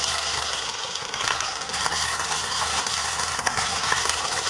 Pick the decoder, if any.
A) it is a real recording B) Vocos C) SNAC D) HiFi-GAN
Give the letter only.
C